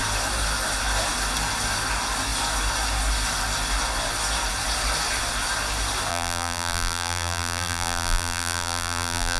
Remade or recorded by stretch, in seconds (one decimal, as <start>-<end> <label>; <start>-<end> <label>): 0.0-6.1 recorded; 6.1-9.4 remade